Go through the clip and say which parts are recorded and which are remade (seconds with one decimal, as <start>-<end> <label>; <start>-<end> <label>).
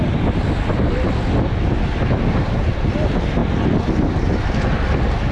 0.0-5.3 recorded